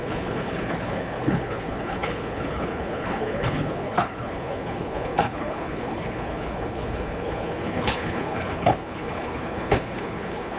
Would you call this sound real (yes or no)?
no